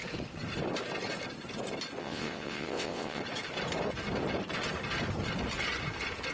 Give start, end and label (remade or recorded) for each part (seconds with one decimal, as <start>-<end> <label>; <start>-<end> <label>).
0.0-2.0 recorded; 2.0-3.2 remade; 3.2-6.3 recorded